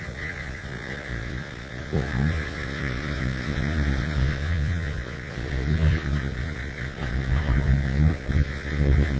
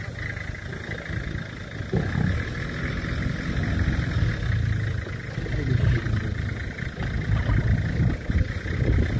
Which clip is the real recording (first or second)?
second